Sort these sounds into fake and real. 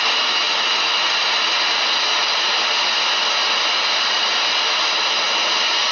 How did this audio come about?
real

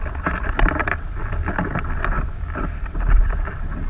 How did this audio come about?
fake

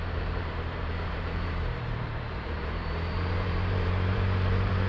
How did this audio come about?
fake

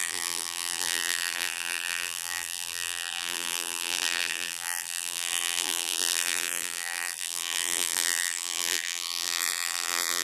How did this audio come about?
fake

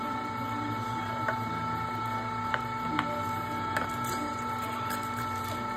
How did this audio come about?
real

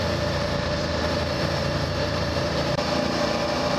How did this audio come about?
fake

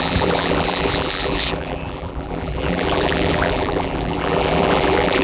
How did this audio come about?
fake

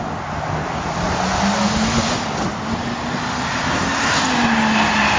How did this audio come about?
real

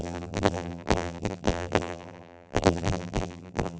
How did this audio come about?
fake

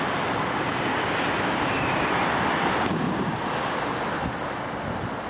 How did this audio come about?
real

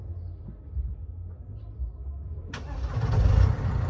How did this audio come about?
real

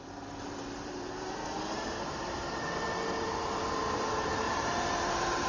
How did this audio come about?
fake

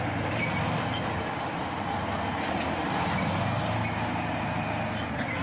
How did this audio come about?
real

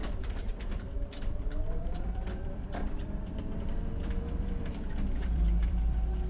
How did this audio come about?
fake